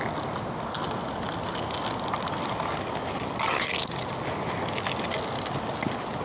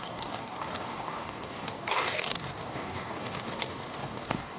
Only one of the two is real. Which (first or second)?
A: first